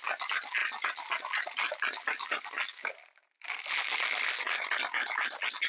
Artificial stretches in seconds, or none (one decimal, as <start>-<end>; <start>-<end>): none